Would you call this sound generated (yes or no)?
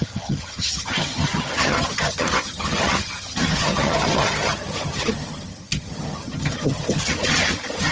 yes